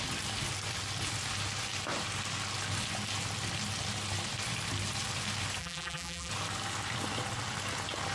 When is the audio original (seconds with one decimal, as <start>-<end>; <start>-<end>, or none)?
0.0-5.6; 6.3-8.1